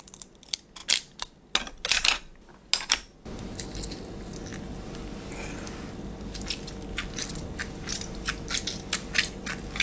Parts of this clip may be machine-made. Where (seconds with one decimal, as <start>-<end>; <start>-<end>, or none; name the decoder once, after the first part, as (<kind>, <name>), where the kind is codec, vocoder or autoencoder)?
none